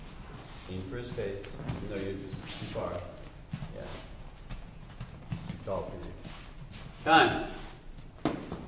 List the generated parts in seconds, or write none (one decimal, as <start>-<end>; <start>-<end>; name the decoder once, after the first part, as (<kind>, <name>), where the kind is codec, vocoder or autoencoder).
2.2-2.7 (vocoder, Vocos); 3.9-5.2